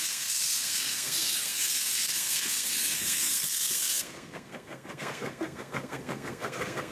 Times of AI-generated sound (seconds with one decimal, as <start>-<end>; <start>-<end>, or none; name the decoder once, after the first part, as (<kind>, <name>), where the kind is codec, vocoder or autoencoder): 0.0-6.9 (codec, SNAC)